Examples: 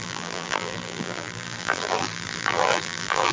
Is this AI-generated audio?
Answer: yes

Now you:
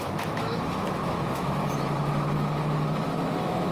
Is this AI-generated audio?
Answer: yes